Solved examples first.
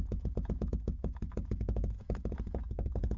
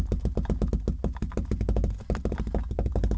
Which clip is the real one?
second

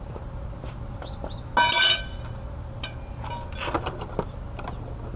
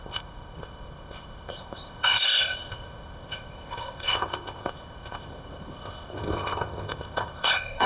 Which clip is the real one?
first